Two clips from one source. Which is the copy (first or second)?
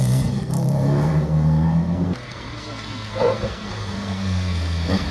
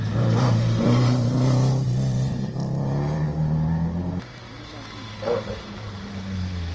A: first